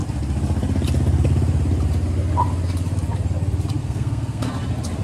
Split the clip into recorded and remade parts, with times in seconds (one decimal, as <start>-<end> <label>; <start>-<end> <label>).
0.0-3.8 recorded; 3.8-4.5 remade; 4.5-5.0 recorded